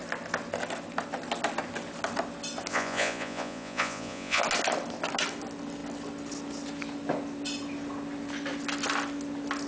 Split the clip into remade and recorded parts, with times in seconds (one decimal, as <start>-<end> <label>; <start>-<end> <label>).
0.0-2.7 recorded; 2.7-4.4 remade; 4.4-9.7 recorded